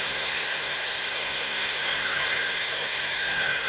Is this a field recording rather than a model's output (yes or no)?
no